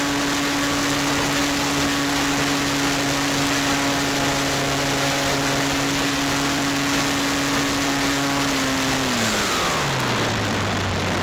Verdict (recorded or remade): recorded